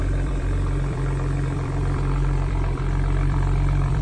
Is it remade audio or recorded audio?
remade